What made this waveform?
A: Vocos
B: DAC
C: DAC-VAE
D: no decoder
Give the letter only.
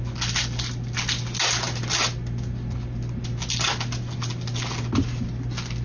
D